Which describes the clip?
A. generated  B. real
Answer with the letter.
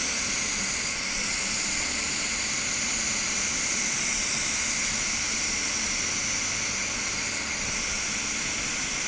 B